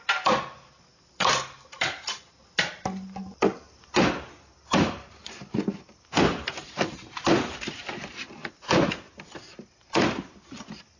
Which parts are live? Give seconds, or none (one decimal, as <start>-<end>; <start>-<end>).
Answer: 0.0-11.0